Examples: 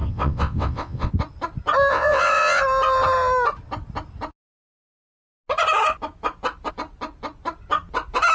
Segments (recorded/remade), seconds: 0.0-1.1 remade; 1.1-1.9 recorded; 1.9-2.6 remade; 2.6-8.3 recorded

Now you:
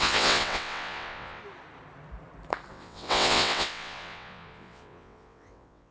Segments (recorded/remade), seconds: 0.0-1.4 remade; 1.4-2.7 recorded; 2.7-5.9 remade

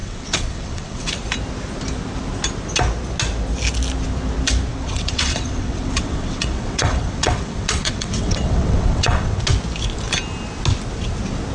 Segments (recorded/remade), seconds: 0.0-1.1 remade; 1.1-4.7 recorded; 4.7-9.4 remade; 9.4-11.5 recorded

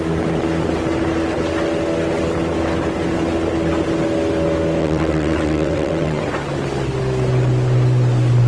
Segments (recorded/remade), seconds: 0.0-4.8 recorded; 4.8-6.2 remade; 6.2-8.5 recorded

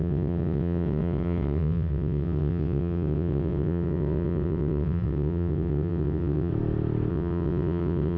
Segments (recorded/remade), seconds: 0.0-6.5 remade; 6.5-7.1 recorded; 7.1-8.2 remade